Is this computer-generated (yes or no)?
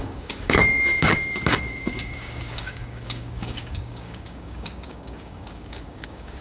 yes